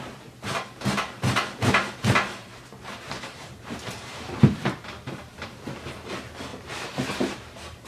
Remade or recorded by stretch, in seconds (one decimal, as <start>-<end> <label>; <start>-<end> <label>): 0.0-2.4 recorded; 2.4-5.7 remade; 5.7-6.5 recorded; 6.5-7.9 remade